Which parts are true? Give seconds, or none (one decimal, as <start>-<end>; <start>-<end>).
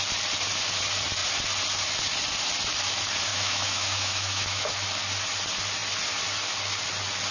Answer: 0.0-3.3; 4.7-7.3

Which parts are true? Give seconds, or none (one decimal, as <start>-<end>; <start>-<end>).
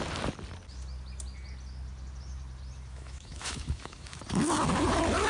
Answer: 0.0-2.9; 4.2-5.3